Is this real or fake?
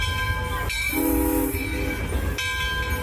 real